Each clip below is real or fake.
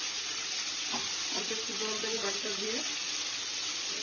real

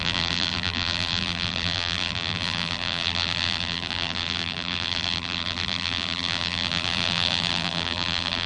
fake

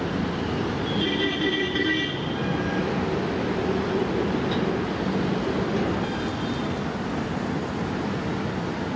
real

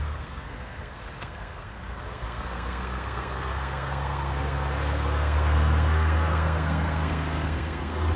fake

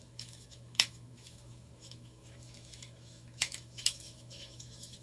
fake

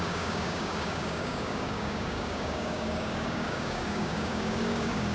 fake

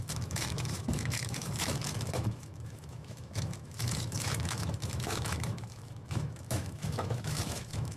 fake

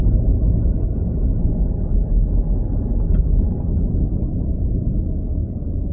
real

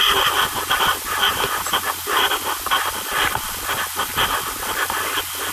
real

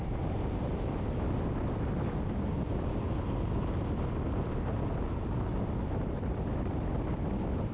real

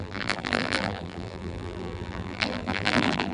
fake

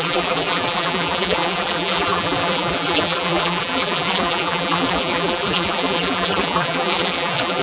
fake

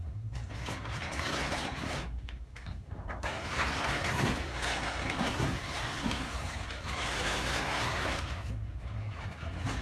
fake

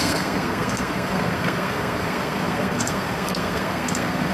fake